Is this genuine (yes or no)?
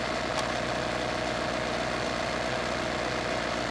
yes